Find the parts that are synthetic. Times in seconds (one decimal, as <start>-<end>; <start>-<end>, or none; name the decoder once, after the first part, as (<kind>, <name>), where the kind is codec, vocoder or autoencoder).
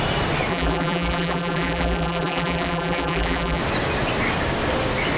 0.5-3.6 (vocoder, BigVGAN v2)